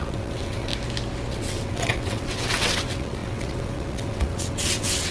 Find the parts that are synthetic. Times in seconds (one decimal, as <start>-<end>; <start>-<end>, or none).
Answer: 0.0-0.7; 1.3-5.1